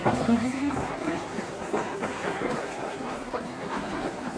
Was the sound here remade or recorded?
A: remade